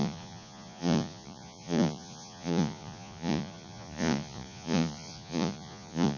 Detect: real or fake fake